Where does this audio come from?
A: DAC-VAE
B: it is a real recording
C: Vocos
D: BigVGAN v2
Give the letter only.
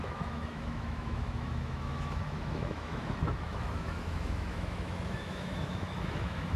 A